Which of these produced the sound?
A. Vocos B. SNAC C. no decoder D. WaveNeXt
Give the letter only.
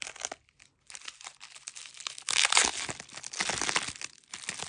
C